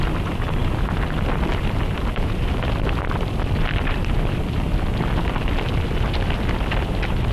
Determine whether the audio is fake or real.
real